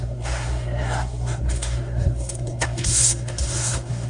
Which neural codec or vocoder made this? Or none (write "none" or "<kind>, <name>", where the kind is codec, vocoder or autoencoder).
codec, SNAC